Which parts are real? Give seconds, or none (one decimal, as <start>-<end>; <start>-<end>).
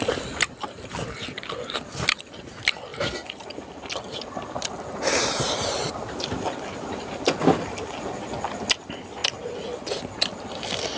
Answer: 9.2-10.4